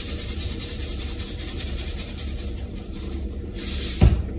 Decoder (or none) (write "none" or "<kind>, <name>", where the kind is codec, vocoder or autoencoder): vocoder, BigVGAN v2